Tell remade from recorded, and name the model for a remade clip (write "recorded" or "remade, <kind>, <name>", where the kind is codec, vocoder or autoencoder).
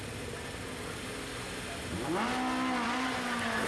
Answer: recorded